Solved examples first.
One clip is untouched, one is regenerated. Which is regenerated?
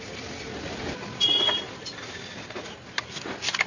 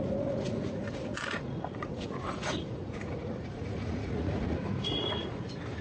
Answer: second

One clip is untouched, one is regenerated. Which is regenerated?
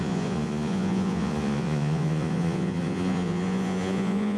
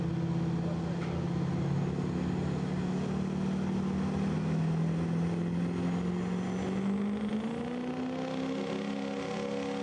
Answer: first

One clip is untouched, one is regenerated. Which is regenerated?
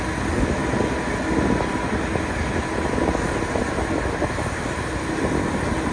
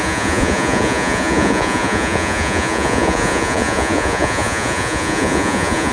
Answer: second